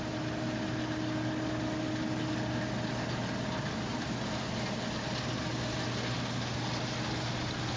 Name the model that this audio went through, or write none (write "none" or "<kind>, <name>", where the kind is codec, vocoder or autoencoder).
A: none